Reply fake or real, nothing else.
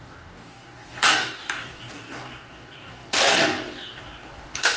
fake